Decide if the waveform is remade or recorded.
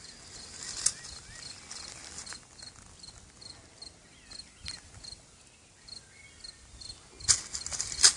recorded